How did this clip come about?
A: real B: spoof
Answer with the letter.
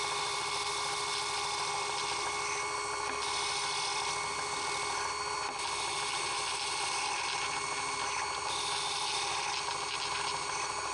A